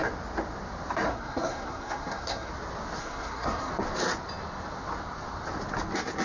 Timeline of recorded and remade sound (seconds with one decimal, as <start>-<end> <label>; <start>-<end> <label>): 0.0-1.1 recorded; 1.1-2.5 remade; 2.5-3.0 recorded; 3.0-3.7 remade; 3.7-6.2 recorded